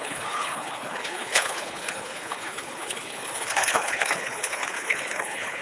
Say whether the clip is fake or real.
fake